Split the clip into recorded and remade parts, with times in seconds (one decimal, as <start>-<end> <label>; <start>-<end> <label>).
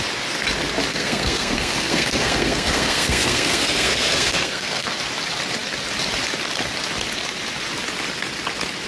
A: 0.0-0.9 recorded; 0.9-4.9 remade; 4.9-8.9 recorded